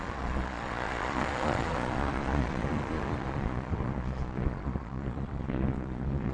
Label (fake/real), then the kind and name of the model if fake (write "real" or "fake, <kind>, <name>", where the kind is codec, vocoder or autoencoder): fake, vocoder, Vocos